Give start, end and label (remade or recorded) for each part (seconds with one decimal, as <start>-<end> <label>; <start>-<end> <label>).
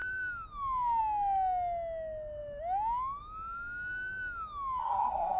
0.0-4.8 recorded; 4.8-5.4 remade